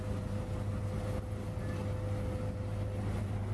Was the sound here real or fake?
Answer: real